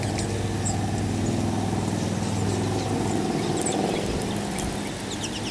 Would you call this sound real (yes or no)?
yes